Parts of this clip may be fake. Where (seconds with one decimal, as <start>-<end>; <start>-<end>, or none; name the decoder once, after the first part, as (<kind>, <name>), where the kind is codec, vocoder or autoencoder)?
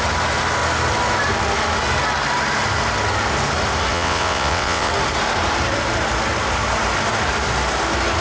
3.9-4.9 (vocoder, WaveNeXt)